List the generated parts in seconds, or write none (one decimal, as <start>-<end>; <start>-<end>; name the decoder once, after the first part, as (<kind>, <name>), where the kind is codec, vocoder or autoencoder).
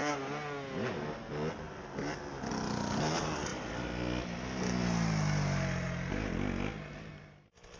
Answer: none